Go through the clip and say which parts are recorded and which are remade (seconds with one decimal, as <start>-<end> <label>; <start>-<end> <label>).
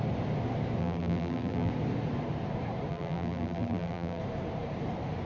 0.0-0.8 recorded; 0.8-1.7 remade; 1.7-2.9 recorded; 2.9-4.2 remade; 4.2-5.3 recorded